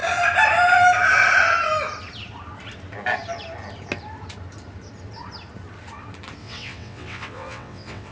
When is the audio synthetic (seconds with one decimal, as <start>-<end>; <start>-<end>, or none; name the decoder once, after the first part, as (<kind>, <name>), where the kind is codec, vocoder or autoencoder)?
6.4-8.1 (vocoder, WaveNeXt)